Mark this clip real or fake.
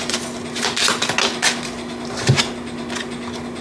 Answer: real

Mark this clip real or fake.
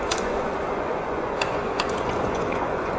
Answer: fake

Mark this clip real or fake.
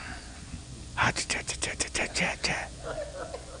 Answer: fake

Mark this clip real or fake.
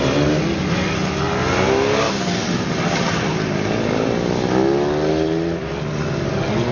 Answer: real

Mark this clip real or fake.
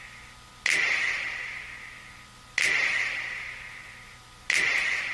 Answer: real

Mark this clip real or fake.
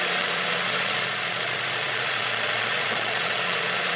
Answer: fake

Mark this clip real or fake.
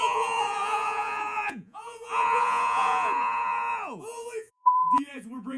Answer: fake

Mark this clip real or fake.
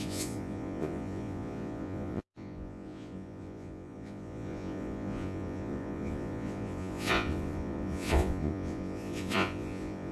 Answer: fake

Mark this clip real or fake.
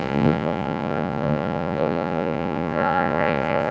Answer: fake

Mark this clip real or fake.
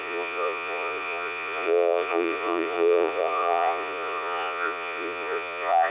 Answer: fake